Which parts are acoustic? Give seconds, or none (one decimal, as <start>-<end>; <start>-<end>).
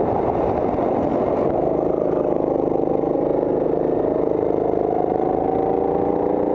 0.0-6.5